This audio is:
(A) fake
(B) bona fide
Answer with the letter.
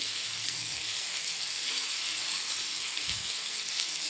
A